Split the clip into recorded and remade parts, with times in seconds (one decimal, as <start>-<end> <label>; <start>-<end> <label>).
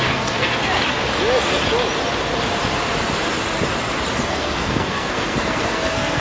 0.0-0.6 remade; 0.6-4.3 recorded; 4.3-6.2 remade